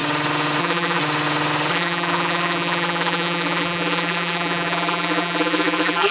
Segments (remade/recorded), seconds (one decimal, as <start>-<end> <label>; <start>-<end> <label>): 0.0-0.6 recorded; 0.6-1.0 remade; 1.0-1.7 recorded; 1.7-6.1 remade